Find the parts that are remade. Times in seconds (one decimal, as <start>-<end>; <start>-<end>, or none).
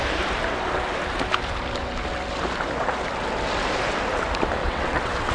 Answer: 4.6-5.3